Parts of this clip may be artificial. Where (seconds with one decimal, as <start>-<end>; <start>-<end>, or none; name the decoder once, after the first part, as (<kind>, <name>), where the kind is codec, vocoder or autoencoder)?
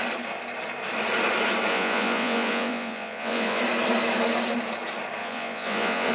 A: 1.7-3.6 (vocoder, Vocos); 5.2-6.1